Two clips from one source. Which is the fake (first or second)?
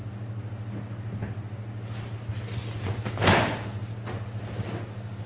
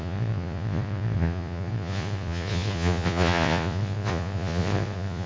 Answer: second